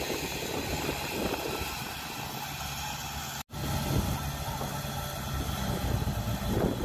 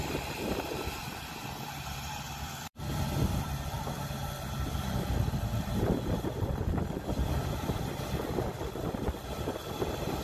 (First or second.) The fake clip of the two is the second